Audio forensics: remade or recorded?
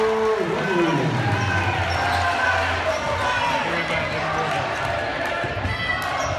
recorded